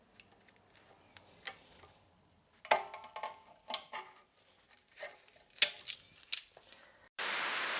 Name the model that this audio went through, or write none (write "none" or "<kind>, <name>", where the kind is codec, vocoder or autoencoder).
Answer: none